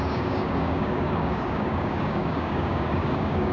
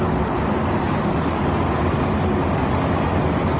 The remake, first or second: first